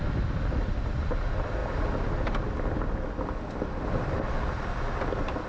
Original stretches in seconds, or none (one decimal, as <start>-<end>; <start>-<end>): 0.0-5.5